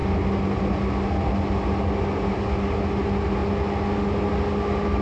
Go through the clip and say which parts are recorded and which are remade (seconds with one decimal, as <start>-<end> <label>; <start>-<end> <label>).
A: 0.0-5.0 recorded